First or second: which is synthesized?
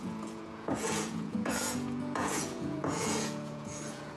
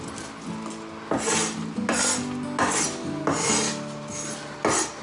first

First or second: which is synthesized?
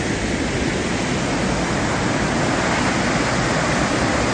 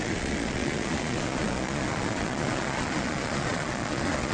second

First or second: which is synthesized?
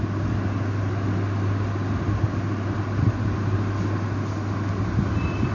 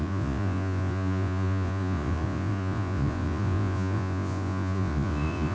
second